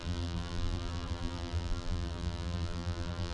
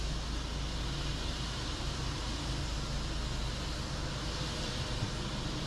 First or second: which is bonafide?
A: second